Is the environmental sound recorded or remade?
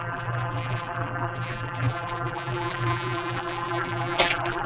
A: remade